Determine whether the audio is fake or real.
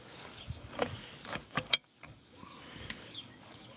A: fake